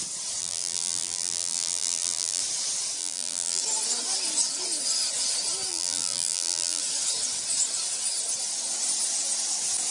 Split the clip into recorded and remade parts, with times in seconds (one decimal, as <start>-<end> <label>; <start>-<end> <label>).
0.0-0.4 recorded; 0.4-2.4 remade; 2.4-3.0 recorded; 3.0-3.6 remade; 3.6-5.7 recorded; 5.7-6.8 remade; 6.8-9.9 recorded